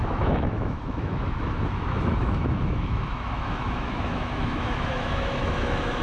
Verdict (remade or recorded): remade